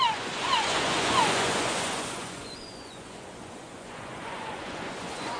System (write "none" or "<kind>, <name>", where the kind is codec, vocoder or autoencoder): vocoder, Vocos